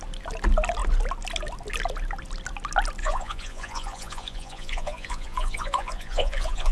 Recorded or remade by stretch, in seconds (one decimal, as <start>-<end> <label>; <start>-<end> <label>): 0.0-3.0 recorded; 3.0-6.7 remade